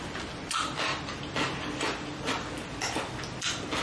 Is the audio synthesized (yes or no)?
no